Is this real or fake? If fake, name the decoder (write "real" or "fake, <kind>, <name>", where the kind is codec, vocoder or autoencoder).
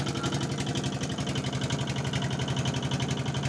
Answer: real